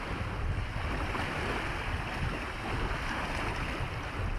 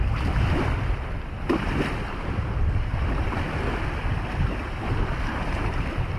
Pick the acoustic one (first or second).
first